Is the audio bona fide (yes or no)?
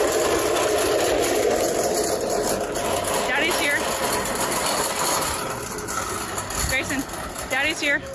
yes